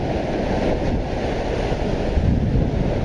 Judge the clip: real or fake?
real